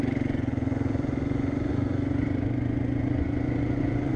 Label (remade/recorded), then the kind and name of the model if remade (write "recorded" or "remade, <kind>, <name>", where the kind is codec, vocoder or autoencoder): remade, vocoder, Vocos